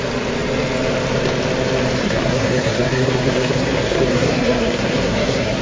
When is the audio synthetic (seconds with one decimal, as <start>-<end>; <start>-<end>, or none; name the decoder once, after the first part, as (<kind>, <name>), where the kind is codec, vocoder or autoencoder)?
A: 2.0-5.6 (codec, SNAC)